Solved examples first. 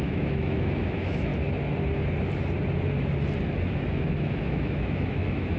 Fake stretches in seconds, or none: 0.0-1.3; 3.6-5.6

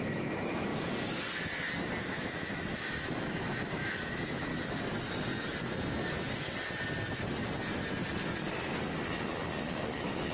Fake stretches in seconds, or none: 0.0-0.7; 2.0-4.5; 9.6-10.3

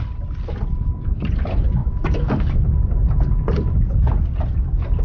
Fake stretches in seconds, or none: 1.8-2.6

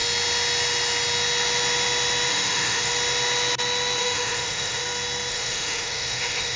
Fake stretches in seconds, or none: 2.3-2.9; 4.0-4.8; 5.3-6.6